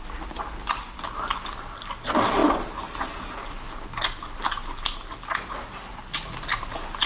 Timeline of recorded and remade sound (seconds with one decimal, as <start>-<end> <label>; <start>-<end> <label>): 0.0-7.1 recorded